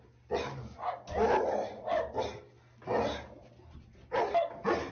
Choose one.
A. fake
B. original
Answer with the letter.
B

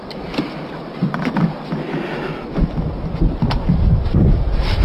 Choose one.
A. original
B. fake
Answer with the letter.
A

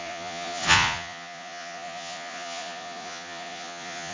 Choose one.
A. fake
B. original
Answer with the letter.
A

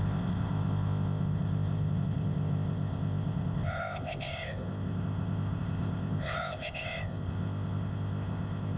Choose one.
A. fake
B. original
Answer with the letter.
A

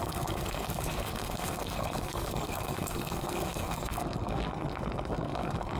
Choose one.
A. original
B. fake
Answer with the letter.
B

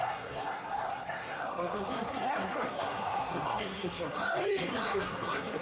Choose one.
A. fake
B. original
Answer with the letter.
A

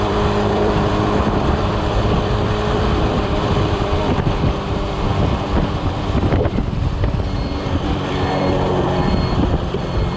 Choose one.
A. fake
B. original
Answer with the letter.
A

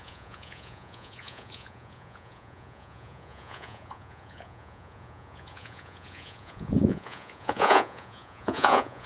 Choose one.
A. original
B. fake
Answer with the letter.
B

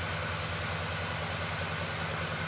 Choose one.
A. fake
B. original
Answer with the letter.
B